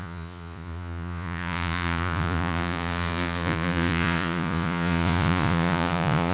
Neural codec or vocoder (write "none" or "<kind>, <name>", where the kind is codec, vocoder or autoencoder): vocoder, Vocos